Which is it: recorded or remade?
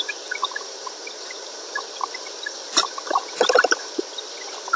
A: recorded